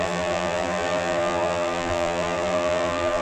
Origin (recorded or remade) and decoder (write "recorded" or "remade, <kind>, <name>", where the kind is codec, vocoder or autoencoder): remade, vocoder, BigVGAN v2